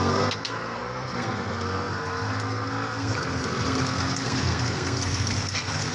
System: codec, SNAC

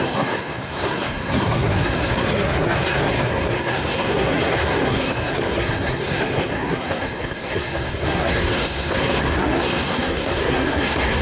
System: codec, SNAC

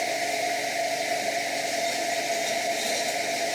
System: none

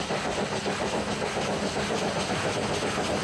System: none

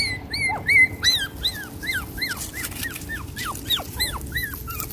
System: none